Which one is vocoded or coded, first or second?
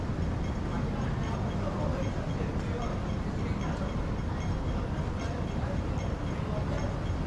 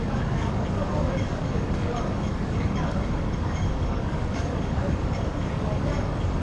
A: second